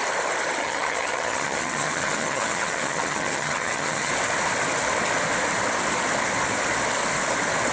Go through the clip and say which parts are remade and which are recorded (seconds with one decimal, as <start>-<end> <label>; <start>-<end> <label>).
0.0-0.6 recorded; 0.6-4.1 remade; 4.1-7.7 recorded